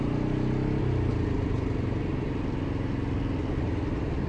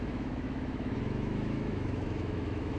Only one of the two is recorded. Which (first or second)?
first